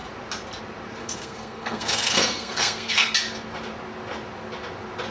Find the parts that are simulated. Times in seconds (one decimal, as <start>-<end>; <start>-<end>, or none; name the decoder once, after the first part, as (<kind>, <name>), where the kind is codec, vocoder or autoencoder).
1.0-3.1 (codec, SNAC)